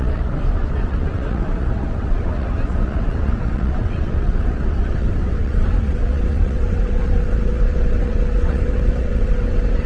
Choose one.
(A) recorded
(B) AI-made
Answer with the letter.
B